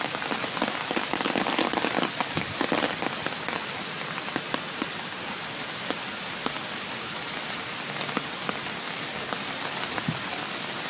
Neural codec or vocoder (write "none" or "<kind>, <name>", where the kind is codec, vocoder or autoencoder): none